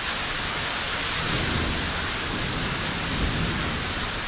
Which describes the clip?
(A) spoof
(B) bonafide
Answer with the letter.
B